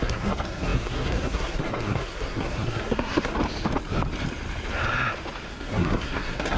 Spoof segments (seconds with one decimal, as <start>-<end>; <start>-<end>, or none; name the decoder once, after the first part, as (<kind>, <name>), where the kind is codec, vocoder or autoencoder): 0.0-3.3 (codec, SNAC); 5.5-6.6